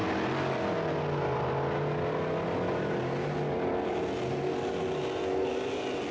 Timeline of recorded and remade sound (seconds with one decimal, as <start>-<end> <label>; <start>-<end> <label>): 0.0-6.1 recorded